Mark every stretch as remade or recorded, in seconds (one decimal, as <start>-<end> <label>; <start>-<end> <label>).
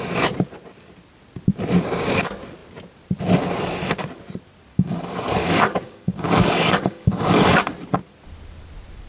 0.0-4.7 recorded; 4.7-7.6 remade; 7.6-9.1 recorded